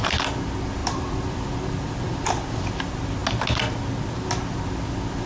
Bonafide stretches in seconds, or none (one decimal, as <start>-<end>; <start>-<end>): 0.0-0.8; 2.7-5.3